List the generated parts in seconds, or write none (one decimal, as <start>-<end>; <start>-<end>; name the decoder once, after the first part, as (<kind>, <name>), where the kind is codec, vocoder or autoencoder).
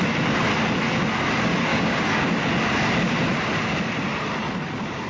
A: 1.7-2.4 (codec, DAC)